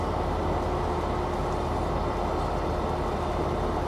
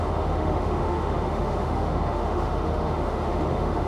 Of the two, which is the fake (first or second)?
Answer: second